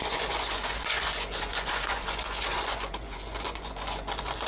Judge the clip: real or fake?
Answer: fake